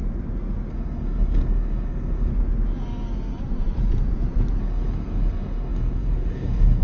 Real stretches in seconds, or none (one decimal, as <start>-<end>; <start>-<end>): 0.0-0.7; 2.3-4.6